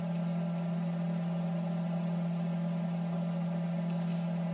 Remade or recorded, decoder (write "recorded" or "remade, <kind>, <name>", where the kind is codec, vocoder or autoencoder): recorded